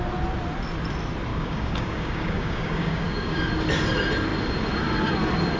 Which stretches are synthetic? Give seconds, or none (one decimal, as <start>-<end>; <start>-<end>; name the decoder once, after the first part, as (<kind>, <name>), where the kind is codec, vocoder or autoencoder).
1.3-3.4 (codec, DAC)